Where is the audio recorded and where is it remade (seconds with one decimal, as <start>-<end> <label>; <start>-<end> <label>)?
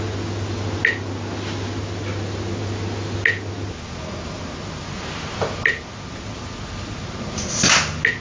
0.0-8.2 recorded